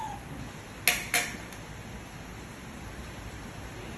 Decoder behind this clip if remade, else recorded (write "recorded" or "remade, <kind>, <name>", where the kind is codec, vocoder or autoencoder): recorded